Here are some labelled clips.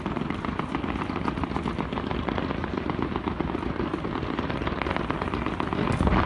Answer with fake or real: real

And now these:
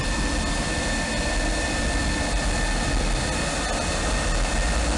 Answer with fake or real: real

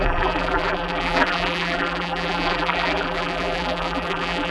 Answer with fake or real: fake